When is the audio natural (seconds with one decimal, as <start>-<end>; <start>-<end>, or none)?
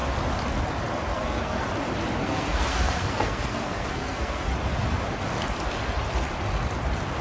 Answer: 0.0-1.1; 1.7-2.2; 4.5-7.2